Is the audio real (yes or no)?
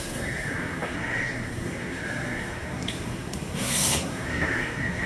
no